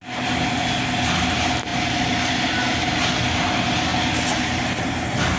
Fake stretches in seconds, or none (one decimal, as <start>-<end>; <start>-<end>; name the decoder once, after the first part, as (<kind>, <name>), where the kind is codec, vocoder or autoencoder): none